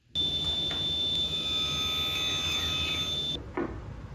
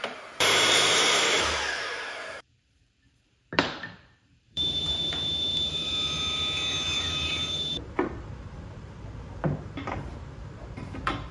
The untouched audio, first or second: first